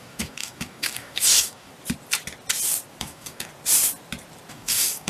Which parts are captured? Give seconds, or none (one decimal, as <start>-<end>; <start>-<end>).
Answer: 1.7-3.0; 3.5-4.5